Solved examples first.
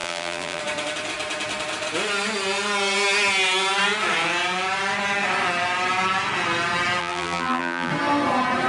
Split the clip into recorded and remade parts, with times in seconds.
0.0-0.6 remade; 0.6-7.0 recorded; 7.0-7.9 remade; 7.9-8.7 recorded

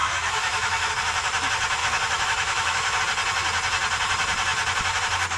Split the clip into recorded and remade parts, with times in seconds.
0.0-0.9 remade; 0.9-1.8 recorded; 1.8-3.0 remade; 3.0-5.4 recorded

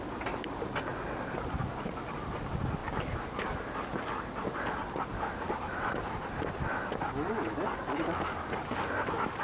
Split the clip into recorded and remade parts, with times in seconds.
0.0-9.4 recorded

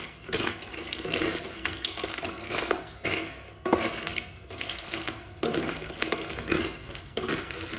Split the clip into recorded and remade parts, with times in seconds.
0.0-7.8 remade

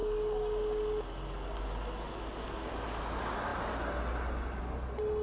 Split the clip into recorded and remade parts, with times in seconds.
0.0-5.2 recorded

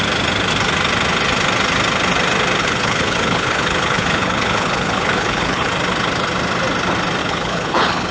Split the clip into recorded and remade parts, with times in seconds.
0.0-2.6 recorded; 2.6-5.7 remade; 5.7-7.2 recorded; 7.2-8.1 remade

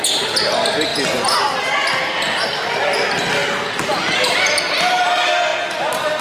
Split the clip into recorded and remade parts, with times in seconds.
0.0-6.2 recorded

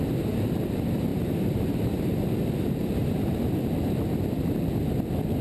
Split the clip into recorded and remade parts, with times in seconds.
0.0-1.1 recorded; 1.1-3.6 remade; 3.6-5.4 recorded